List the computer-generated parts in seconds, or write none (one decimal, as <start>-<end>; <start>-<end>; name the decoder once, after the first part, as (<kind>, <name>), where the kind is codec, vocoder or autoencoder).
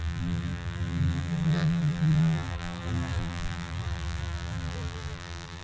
0.0-5.6 (vocoder, BigVGAN v2)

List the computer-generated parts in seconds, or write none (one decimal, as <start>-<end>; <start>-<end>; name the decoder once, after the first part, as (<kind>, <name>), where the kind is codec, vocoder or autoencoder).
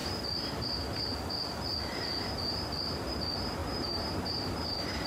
3.6-5.1 (vocoder, BigVGAN v2)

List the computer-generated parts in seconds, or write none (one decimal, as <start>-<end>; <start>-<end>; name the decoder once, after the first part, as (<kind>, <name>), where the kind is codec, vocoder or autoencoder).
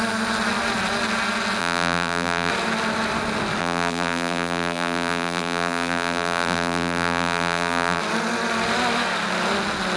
1.6-2.5 (vocoder, BigVGAN v2); 3.6-8.0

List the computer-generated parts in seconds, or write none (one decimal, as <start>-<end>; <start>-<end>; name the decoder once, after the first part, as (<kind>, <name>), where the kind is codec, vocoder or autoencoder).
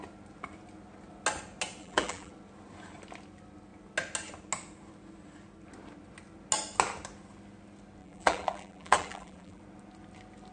1.8-2.3 (vocoder, BigVGAN v2); 8.0-9.6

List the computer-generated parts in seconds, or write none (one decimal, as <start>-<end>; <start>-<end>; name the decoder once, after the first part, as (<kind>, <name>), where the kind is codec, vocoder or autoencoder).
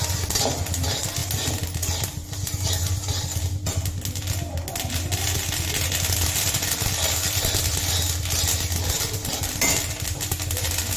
none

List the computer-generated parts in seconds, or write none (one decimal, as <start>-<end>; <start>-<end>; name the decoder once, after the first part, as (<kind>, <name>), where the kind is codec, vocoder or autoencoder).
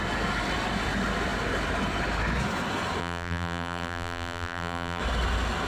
3.0-5.0 (vocoder, BigVGAN v2)